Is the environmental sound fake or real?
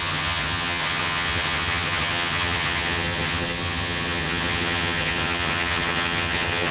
fake